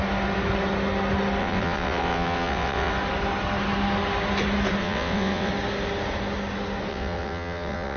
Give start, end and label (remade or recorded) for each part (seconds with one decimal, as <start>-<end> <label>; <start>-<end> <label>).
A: 0.0-1.4 recorded; 1.4-2.9 remade; 2.9-4.8 recorded; 4.8-5.5 remade; 5.5-6.9 recorded; 6.9-8.0 remade